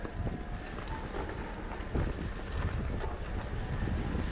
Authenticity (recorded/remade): recorded